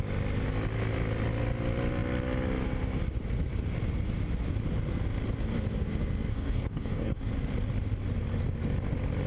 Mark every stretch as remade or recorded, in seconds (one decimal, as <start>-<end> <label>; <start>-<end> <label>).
0.0-6.3 recorded; 6.3-7.3 remade; 7.3-9.3 recorded